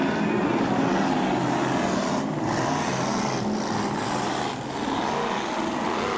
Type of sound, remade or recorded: recorded